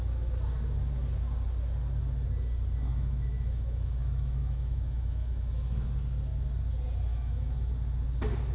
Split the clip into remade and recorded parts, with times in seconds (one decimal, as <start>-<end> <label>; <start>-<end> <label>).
0.0-2.9 recorded; 2.9-5.8 remade; 5.8-7.1 recorded; 7.1-7.7 remade; 7.7-8.5 recorded